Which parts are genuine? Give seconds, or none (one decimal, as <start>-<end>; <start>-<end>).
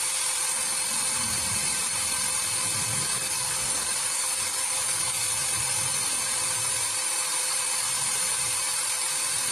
0.0-3.1; 5.3-9.5